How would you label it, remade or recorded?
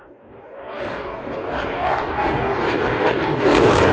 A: remade